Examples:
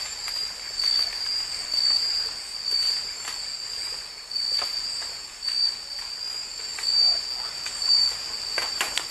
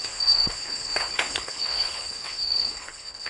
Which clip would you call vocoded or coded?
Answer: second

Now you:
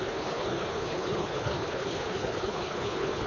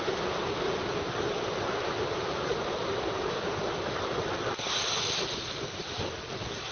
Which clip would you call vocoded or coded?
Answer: first